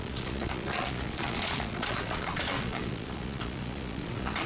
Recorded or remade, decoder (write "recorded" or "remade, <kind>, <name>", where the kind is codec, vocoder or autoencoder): remade, vocoder, Vocos